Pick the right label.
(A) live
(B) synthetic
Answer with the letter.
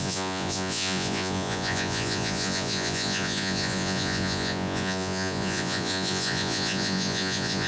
B